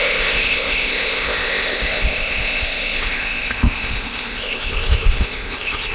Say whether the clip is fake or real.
fake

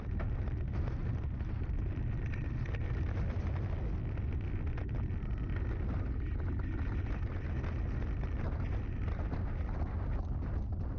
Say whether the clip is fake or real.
real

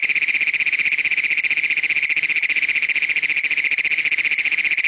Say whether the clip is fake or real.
real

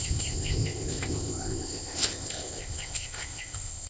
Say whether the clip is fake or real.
fake